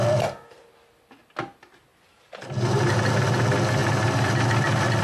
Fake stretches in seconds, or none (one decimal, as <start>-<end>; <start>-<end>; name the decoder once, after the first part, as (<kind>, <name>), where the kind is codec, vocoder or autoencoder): none